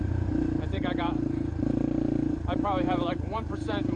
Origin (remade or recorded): remade